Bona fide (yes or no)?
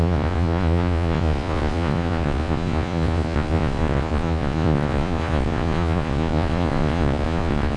no